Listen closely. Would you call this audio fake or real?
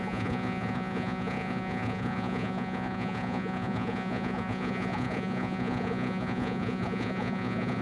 fake